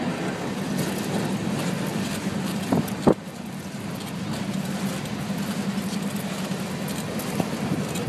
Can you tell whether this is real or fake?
real